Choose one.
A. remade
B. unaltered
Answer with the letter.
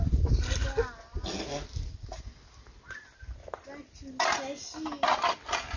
B